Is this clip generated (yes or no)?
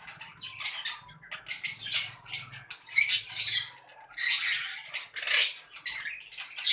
no